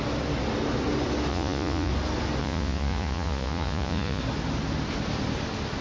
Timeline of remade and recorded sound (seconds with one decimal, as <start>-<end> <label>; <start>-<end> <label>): 0.0-1.3 recorded; 1.3-1.9 remade; 1.9-2.4 recorded; 2.4-4.2 remade; 4.2-5.8 recorded